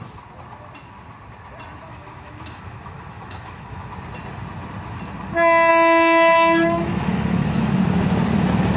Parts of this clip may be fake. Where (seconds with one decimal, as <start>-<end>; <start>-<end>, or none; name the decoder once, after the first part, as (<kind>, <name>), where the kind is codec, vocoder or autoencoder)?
1.9-3.9 (autoencoder, DAC-VAE); 5.7-7.8